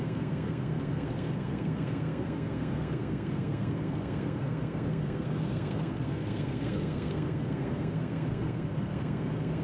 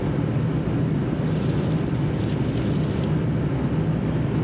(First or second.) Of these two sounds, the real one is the second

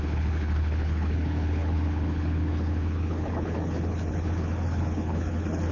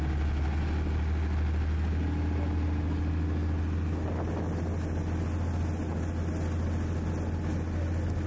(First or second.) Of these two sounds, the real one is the second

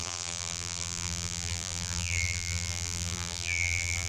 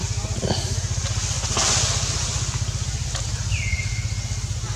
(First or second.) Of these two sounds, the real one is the second